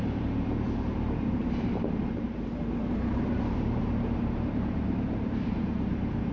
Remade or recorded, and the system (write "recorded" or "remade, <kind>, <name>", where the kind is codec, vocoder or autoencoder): remade, vocoder, BigVGAN v2